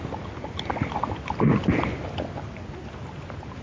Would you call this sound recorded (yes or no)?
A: yes